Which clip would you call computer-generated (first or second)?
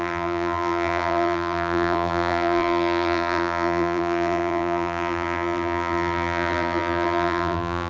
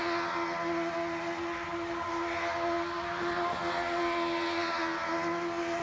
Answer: first